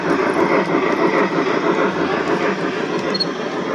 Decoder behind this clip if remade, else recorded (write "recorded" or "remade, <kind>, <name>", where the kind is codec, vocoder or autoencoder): recorded